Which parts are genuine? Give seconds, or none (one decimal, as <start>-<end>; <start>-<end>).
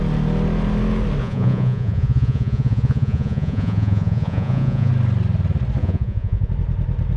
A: 0.0-1.2; 4.9-5.8; 6.5-7.2